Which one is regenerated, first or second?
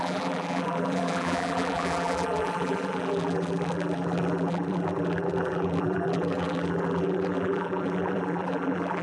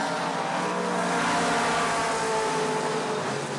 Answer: first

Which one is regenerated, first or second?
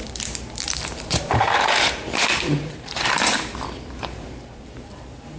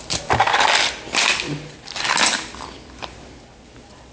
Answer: first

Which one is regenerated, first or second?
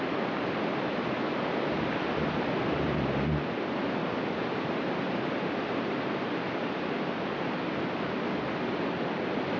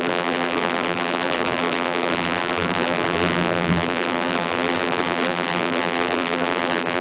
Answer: second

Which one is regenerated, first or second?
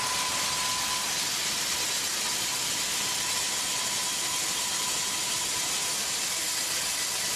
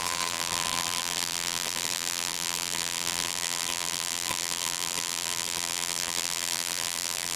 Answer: second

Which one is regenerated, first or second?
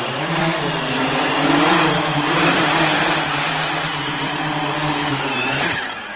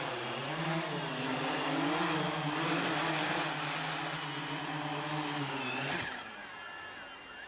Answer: first